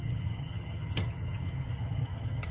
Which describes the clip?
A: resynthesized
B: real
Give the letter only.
A